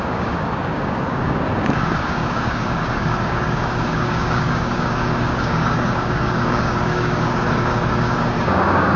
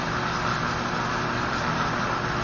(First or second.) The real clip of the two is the second